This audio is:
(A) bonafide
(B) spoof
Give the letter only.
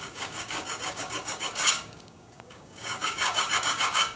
B